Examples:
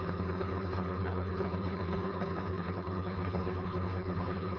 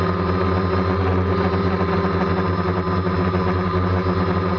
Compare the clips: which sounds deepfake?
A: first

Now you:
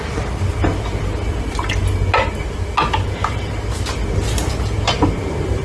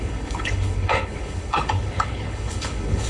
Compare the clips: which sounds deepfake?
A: second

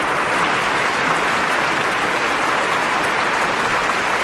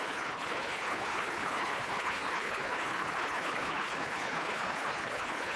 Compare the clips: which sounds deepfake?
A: second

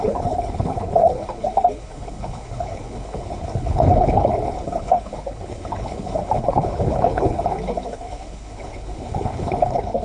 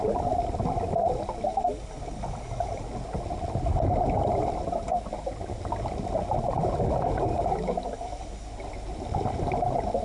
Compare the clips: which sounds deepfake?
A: first